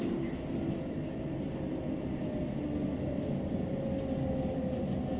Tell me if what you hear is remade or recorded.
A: recorded